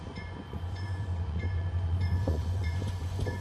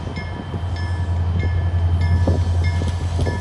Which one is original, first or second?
second